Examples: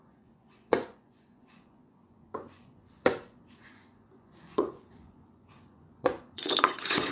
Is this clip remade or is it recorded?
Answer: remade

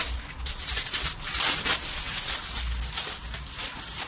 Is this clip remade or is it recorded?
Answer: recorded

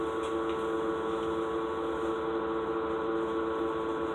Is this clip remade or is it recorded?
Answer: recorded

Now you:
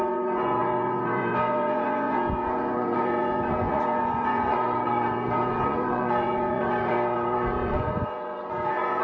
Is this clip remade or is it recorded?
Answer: remade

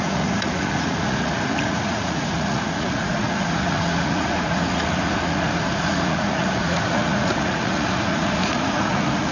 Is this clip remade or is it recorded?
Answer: remade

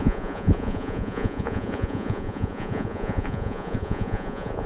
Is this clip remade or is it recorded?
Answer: remade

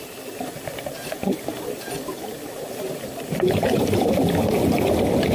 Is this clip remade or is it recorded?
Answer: recorded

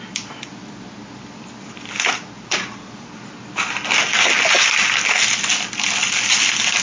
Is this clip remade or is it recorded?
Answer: recorded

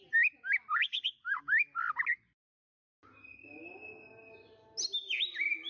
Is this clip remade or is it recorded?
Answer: recorded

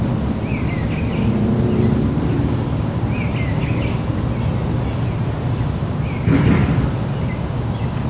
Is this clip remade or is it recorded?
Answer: recorded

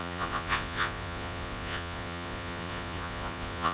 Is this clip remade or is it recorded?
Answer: remade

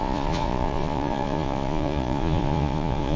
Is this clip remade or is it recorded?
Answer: remade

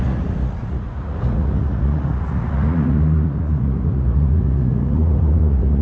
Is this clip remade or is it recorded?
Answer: remade